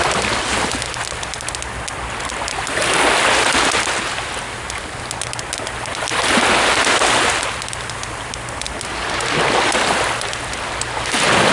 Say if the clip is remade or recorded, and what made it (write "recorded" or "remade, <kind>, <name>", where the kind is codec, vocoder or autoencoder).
recorded